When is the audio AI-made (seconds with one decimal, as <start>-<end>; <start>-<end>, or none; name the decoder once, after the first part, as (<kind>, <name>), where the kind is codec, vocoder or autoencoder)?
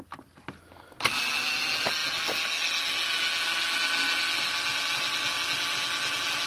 none